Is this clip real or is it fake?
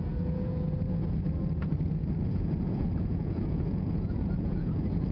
fake